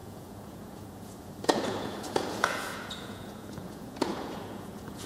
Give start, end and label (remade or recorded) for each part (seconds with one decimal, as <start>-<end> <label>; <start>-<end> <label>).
0.0-5.1 remade